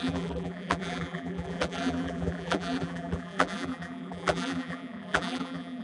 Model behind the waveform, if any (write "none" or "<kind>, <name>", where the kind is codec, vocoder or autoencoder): vocoder, BigVGAN v2